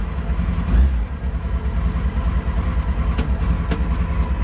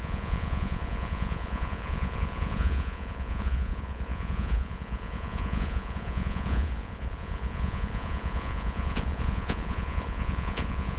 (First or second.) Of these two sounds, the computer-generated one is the second